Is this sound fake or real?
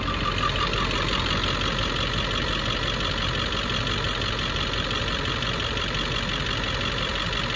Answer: real